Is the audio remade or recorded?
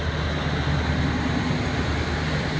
recorded